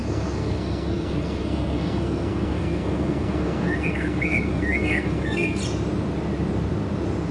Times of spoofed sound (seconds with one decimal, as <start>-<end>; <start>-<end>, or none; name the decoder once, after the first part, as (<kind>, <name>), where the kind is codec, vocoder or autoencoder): 0.0-5.6 (codec, SNAC)